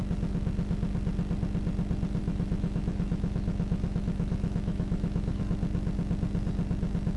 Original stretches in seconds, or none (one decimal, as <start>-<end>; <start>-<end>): 0.0-2.2; 5.4-7.2